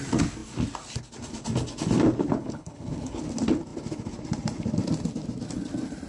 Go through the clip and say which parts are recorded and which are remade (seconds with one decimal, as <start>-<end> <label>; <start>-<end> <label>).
0.0-2.4 recorded; 2.4-3.2 remade; 3.2-6.1 recorded